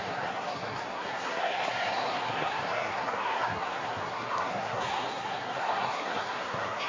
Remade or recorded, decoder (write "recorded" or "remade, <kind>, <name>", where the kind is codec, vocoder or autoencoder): remade, codec, SNAC